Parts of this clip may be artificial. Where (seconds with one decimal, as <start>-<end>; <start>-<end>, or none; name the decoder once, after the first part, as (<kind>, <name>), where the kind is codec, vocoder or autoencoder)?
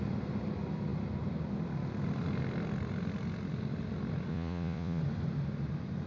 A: 4.3-5.0 (vocoder, Vocos)